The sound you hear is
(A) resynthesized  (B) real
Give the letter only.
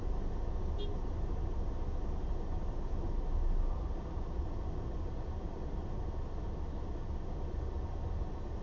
B